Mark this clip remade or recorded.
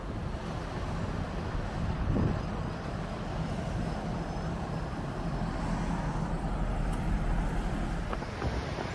recorded